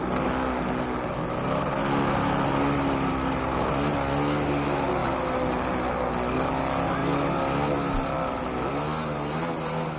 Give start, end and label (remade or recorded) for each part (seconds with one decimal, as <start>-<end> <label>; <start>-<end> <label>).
0.0-10.0 recorded